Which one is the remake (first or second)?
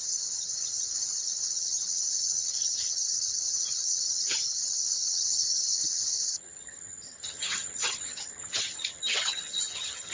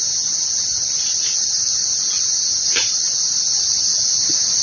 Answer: first